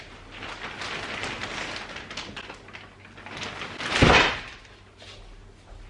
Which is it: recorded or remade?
recorded